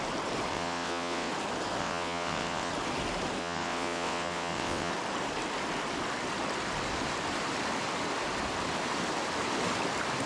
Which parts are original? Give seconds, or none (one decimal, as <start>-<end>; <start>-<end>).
0.0-0.5; 1.3-1.8; 2.7-3.4; 4.9-10.3